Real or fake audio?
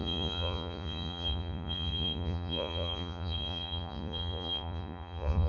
fake